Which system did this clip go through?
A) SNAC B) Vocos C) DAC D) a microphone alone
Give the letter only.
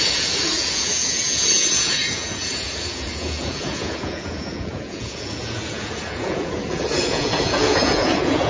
B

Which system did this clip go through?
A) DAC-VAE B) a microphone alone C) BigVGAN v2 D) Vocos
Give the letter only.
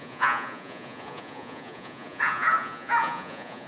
D